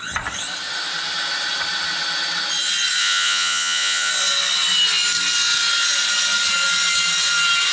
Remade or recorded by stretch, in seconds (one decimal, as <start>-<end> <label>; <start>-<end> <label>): 0.0-3.0 recorded; 3.0-4.1 remade; 4.1-7.7 recorded